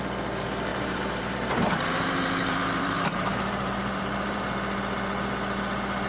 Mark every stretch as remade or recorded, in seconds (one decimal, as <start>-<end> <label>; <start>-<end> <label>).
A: 0.0-0.7 recorded; 0.7-4.4 remade; 4.4-6.1 recorded